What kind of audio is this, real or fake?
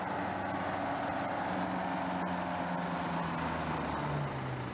real